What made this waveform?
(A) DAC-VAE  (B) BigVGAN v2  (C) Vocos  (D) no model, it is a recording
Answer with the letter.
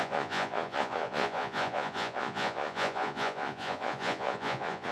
C